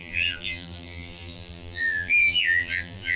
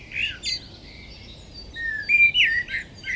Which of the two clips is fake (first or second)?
first